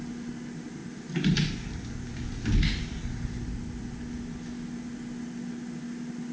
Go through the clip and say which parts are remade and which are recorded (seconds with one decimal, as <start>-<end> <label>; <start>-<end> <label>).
0.0-6.3 recorded